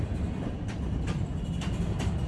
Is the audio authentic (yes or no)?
no